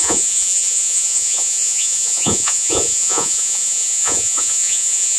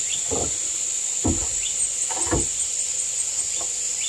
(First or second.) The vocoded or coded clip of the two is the first